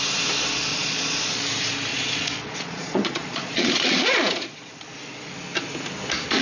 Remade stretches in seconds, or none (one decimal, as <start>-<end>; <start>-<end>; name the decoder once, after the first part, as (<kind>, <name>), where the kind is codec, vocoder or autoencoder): 0.7-1.4 (vocoder, Vocos); 1.9-4.9